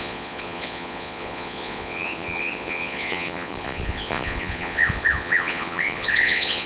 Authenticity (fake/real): fake